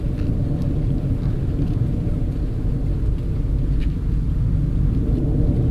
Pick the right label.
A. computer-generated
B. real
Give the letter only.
B